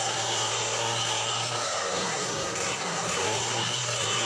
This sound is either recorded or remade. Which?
remade